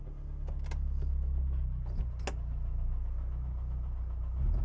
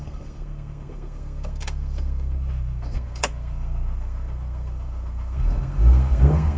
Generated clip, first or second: second